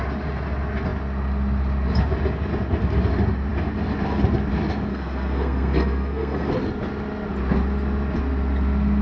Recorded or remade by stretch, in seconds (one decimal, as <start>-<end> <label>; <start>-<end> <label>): 0.0-4.9 recorded; 4.9-6.5 remade; 6.5-9.0 recorded